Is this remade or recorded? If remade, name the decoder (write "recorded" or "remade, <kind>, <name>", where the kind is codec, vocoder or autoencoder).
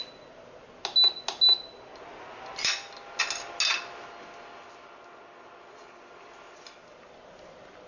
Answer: recorded